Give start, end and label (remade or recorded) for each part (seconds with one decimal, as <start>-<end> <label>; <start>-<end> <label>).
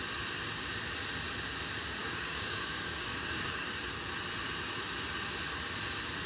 0.0-2.0 recorded; 2.0-3.7 remade; 3.7-6.3 recorded